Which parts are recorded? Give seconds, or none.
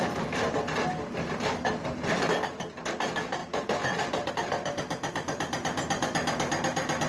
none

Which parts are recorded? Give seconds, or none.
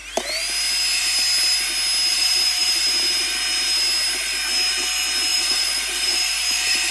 0.0-2.1; 2.8-5.3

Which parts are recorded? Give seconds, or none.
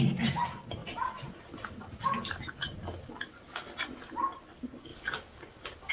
0.8-4.2; 4.9-5.9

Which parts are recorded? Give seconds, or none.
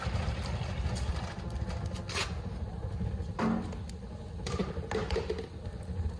0.0-6.2